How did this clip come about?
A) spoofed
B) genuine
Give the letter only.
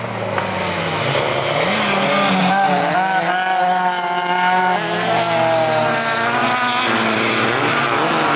B